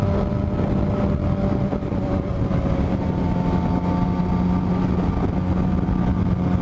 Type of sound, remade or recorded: recorded